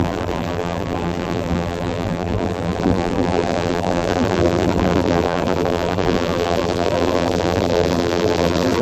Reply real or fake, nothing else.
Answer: fake